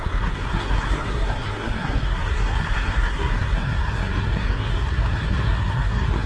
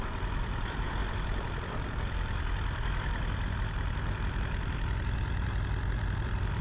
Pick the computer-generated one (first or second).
first